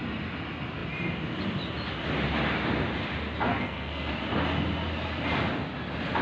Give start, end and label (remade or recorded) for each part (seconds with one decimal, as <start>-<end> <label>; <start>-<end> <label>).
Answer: 0.0-3.5 recorded; 3.5-4.1 remade; 4.1-6.2 recorded